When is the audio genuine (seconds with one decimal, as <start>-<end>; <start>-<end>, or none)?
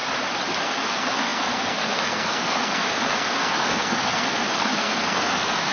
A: 0.0-0.6